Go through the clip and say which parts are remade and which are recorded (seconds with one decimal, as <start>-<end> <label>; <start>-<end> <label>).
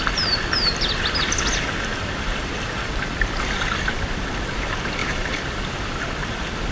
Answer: 0.0-1.9 recorded; 1.9-4.2 remade; 4.2-5.0 recorded; 5.0-5.6 remade; 5.6-6.7 recorded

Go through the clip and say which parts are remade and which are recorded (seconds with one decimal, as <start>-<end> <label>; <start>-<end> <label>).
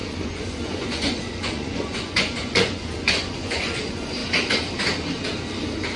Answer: 0.0-4.2 remade; 4.2-6.0 recorded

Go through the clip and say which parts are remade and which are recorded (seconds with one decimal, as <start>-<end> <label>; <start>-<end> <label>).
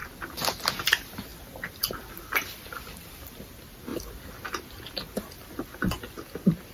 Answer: 0.0-1.3 recorded; 1.3-3.5 remade; 3.5-3.9 recorded; 3.9-5.6 remade; 5.6-6.7 recorded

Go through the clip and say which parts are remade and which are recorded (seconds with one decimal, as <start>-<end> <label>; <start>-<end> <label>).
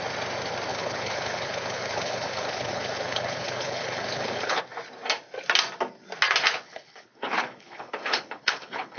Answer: 0.0-0.7 recorded; 0.7-4.6 remade; 4.6-6.5 recorded; 6.5-9.0 remade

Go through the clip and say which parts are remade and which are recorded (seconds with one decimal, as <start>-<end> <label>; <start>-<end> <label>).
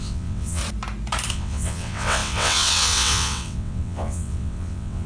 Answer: 0.0-0.6 remade; 0.6-1.3 recorded; 1.3-5.1 remade